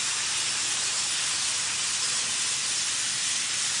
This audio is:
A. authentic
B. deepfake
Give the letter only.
A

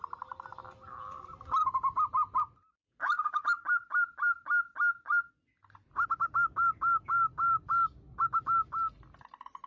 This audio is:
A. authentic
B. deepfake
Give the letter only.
A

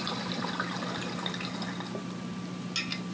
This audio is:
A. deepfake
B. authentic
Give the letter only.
B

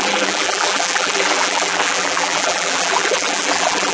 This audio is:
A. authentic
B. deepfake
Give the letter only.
B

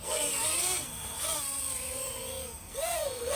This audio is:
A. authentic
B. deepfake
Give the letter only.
B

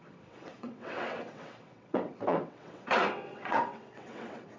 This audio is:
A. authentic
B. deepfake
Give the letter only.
B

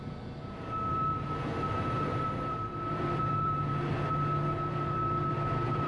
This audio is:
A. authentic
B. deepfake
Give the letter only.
B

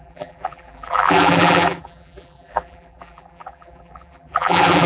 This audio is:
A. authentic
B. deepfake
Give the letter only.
B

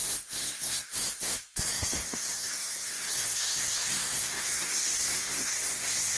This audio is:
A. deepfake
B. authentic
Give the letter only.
A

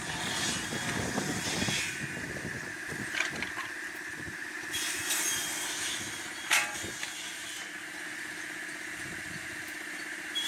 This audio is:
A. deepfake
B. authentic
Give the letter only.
B